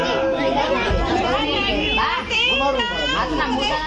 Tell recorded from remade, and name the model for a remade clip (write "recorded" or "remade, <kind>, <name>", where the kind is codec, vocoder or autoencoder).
recorded